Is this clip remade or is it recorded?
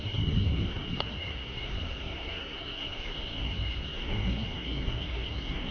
remade